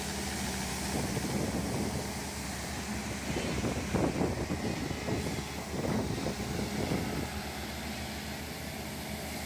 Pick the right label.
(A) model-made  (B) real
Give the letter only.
B